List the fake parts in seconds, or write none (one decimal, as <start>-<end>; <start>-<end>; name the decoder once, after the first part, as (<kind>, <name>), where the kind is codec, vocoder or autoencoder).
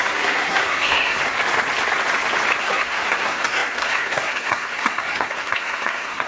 0.0-1.2 (codec, SNAC); 2.6-6.3